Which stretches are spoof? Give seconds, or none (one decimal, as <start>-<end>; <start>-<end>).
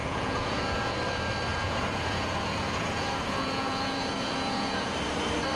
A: 0.0-0.9; 1.5-4.9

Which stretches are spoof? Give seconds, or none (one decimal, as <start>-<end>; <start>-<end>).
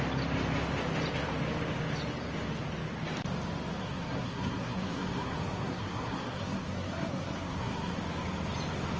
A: 3.8-8.0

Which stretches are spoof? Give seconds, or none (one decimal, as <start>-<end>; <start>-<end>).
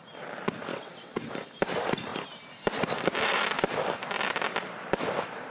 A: 0.7-1.3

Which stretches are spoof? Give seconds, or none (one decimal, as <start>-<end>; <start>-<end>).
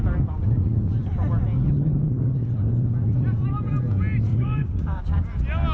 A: 4.3-5.0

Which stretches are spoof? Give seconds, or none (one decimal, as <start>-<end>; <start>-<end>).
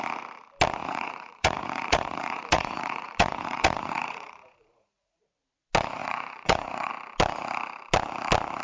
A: 0.8-5.2; 6.0-6.9